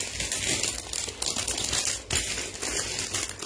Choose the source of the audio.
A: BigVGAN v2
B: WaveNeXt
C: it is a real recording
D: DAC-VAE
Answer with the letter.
C